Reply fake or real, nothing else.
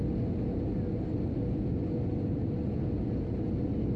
real